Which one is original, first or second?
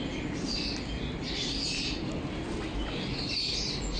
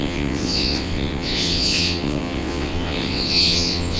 first